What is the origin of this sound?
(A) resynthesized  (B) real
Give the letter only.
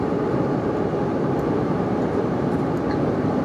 A